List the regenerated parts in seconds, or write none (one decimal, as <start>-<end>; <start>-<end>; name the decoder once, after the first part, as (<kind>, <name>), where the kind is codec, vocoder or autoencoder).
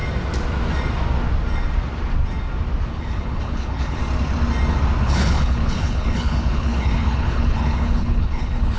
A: 2.9-4.0 (codec, HILCodec); 5.0-8.8